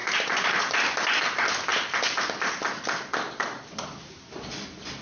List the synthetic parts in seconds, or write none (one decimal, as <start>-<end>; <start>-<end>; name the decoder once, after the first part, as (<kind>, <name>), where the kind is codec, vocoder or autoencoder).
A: 0.0-0.7 (vocoder, BigVGAN v2)